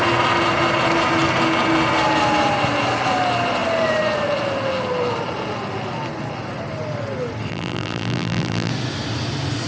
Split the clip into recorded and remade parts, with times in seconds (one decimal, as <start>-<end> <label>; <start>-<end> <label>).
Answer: 0.0-7.5 recorded; 7.5-8.7 remade; 8.7-9.7 recorded